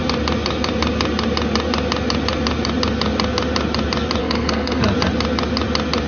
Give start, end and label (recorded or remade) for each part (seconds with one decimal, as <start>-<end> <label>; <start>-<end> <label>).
0.0-4.2 recorded; 4.2-4.8 remade; 4.8-6.1 recorded